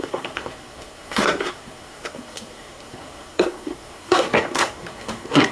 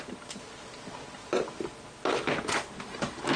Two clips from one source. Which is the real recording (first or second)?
second